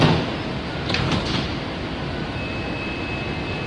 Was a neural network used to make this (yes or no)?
no